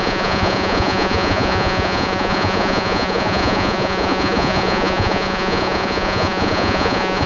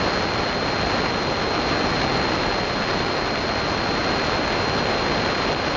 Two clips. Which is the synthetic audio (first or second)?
first